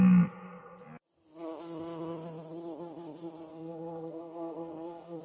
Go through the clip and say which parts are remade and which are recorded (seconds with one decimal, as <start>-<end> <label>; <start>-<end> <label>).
0.0-3.5 recorded; 3.5-5.2 remade